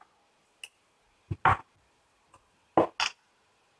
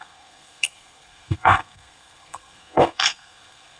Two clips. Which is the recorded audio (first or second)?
first